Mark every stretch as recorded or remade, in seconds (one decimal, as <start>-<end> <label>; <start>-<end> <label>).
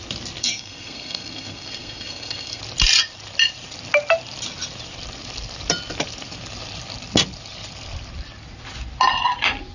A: 0.0-0.4 recorded; 0.4-2.6 remade; 2.6-9.7 recorded